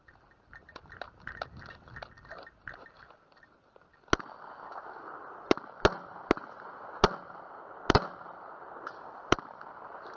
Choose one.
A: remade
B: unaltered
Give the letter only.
B